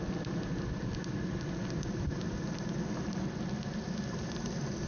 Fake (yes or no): no